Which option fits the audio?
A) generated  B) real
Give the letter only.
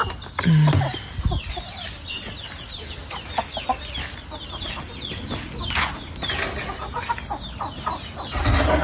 B